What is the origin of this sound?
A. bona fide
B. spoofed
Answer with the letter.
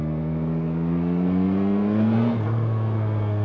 B